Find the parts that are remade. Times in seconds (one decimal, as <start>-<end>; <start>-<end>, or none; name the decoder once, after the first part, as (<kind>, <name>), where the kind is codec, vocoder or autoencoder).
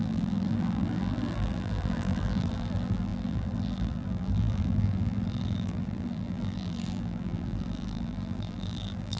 0.0-9.2 (vocoder, BigVGAN v2)